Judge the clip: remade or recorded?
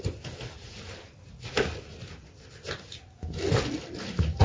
recorded